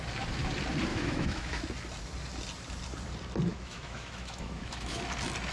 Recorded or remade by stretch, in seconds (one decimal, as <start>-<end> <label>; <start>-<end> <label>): 0.0-0.9 recorded; 0.9-1.6 remade; 1.6-3.5 recorded; 3.5-5.0 remade; 5.0-5.5 recorded